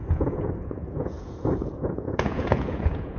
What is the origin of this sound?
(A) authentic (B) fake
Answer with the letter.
B